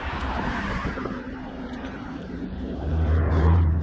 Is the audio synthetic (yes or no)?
yes